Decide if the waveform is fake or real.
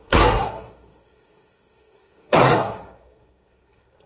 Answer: fake